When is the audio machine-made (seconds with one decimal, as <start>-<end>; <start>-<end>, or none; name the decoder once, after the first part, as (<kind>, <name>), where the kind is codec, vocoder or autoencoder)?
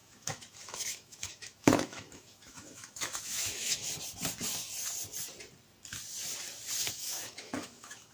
0.0-3.8 (autoencoder, DAC-VAE); 6.9-8.1